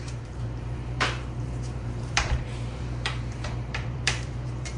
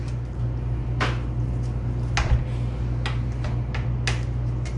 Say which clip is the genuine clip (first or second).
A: second